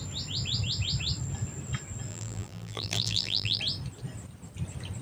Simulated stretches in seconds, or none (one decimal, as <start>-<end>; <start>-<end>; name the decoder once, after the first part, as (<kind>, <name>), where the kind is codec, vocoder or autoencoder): 2.1-3.6 (vocoder, BigVGAN v2)